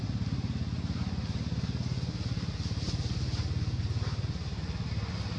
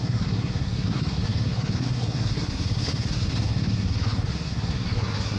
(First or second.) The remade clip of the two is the second